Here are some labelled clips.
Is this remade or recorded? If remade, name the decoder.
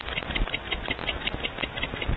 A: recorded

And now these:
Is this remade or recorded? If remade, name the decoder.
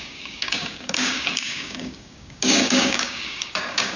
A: remade, codec, DAC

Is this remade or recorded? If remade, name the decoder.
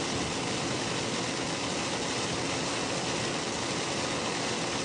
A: recorded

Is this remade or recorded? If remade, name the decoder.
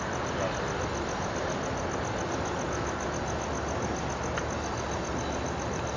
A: recorded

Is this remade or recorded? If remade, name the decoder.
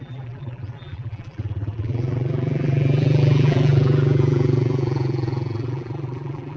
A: remade, vocoder, BigVGAN v2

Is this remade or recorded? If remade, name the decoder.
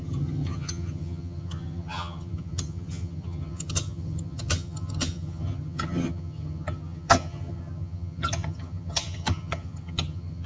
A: remade, vocoder, HiFi-GAN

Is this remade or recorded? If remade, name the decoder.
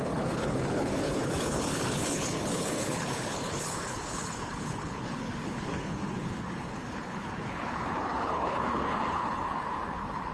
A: remade, codec, HILCodec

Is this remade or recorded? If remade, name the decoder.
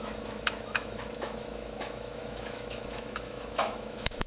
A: remade, autoencoder, DAC-VAE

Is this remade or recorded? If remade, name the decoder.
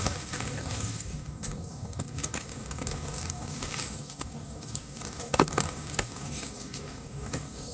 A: remade, codec, DAC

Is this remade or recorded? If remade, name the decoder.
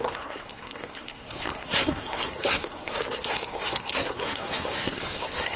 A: remade, codec, SNAC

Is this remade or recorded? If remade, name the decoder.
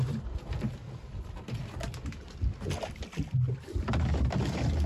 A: recorded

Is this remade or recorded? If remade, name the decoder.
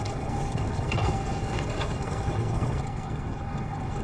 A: remade, codec, SNAC